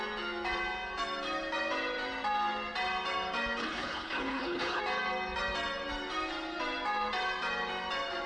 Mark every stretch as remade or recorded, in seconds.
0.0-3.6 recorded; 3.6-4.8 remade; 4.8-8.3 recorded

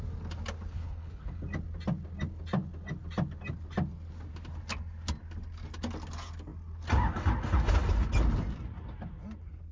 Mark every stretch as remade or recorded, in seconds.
0.0-0.7 recorded; 0.7-1.4 remade; 1.4-9.7 recorded

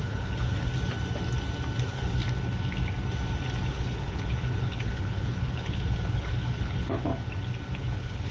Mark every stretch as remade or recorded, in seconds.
0.0-0.7 remade; 0.7-1.8 recorded; 1.8-2.2 remade; 2.2-3.7 recorded; 3.7-7.1 remade; 7.1-7.8 recorded; 7.8-8.3 remade

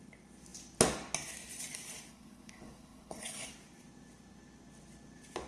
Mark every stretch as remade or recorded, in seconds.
0.0-2.1 recorded; 2.1-3.5 remade; 3.5-5.5 recorded

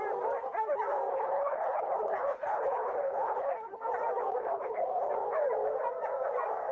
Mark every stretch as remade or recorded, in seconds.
0.0-1.1 recorded; 1.1-3.5 remade; 3.5-4.3 recorded; 4.3-5.1 remade; 5.1-6.7 recorded

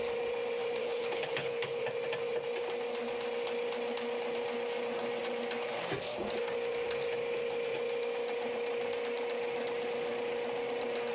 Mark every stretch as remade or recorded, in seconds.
0.0-0.8 recorded; 0.8-1.8 remade; 1.8-11.1 recorded

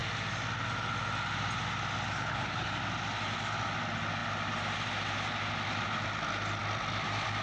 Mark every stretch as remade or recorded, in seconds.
0.0-2.2 recorded; 2.2-2.7 remade; 2.7-7.4 recorded

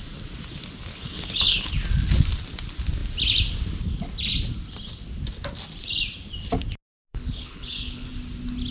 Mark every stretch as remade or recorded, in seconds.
0.0-0.9 recorded; 0.9-1.7 remade; 1.7-7.1 recorded; 7.1-8.1 remade; 8.1-8.7 recorded